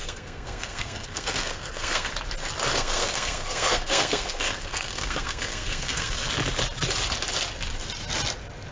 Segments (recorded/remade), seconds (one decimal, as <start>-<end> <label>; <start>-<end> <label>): 0.0-2.1 remade; 2.1-2.7 recorded; 2.7-6.3 remade; 6.3-8.7 recorded